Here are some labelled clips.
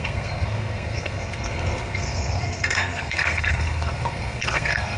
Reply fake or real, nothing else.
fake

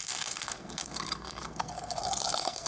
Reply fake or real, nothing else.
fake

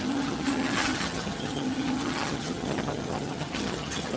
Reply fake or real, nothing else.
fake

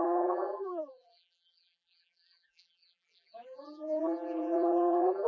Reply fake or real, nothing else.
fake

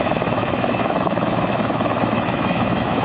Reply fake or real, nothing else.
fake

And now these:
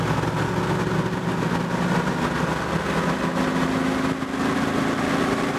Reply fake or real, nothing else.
real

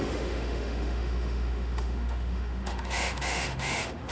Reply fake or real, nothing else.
fake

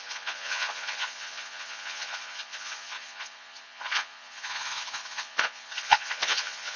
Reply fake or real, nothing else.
fake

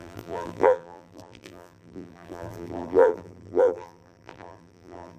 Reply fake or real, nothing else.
fake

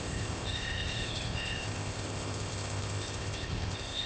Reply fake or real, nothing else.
fake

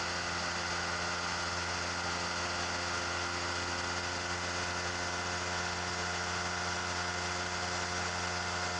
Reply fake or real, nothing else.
real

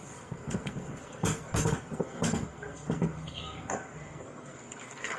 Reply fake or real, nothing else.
fake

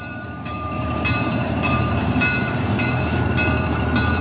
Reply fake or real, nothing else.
fake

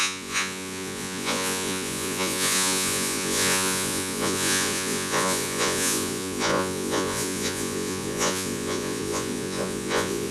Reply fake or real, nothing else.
fake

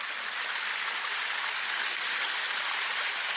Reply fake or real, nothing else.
real